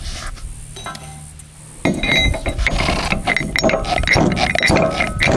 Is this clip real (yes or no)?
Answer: yes